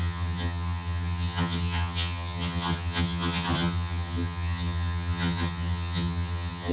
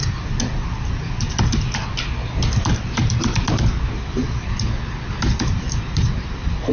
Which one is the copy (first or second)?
first